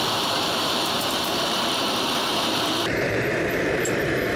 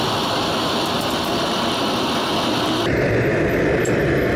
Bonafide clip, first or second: second